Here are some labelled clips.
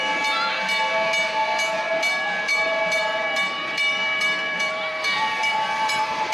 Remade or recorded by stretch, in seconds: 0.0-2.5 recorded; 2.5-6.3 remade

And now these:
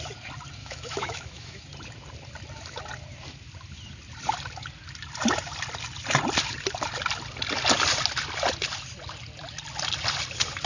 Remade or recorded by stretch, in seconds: 0.0-0.6 recorded; 0.6-1.6 remade; 1.6-10.7 recorded

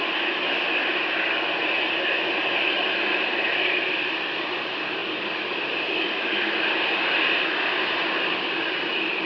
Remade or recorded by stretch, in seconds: 0.0-9.3 recorded

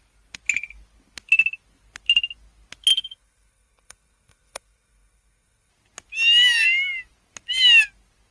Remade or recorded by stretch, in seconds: 0.0-2.9 recorded; 2.9-5.7 remade; 5.7-8.3 recorded

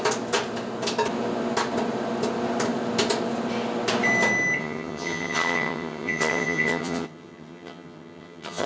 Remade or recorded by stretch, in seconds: 0.0-4.6 recorded; 4.6-8.7 remade